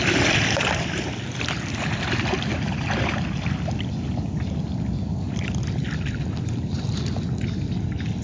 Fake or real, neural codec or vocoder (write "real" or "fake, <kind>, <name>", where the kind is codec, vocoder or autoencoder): real